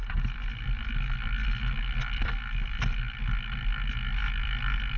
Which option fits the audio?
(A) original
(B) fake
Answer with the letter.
A